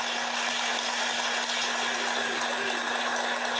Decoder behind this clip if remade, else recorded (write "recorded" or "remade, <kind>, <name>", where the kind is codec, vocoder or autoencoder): recorded